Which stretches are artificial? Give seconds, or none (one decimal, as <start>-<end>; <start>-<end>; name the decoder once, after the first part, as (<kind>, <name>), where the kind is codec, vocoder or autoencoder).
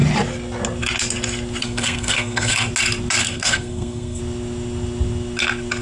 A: 1.6-2.7 (codec, SNAC); 3.2-4.2